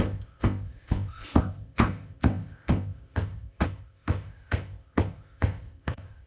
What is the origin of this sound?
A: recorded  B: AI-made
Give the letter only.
B